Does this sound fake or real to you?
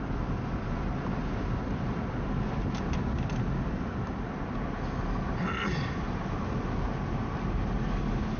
real